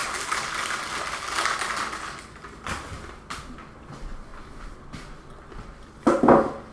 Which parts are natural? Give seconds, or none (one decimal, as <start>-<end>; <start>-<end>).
0.0-6.7

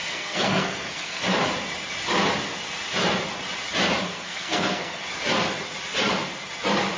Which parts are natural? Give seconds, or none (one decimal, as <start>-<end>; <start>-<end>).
1.2-4.1; 5.0-7.0

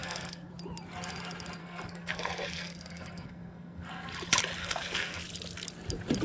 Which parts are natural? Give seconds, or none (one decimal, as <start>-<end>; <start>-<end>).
0.5-1.6; 3.9-4.6; 5.2-6.2

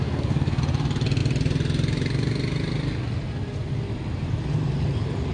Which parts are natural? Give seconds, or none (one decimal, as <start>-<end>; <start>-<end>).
0.6-5.3

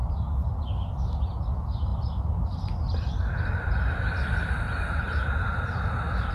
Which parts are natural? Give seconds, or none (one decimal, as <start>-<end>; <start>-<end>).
0.0-6.3